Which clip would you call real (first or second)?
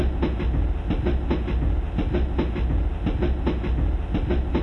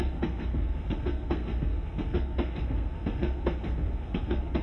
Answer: first